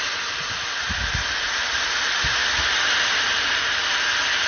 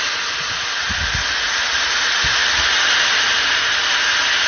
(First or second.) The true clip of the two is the second